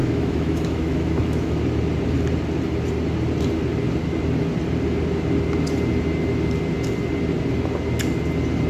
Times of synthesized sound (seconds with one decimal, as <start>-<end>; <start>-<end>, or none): 0.0-1.6